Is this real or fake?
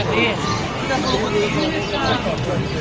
real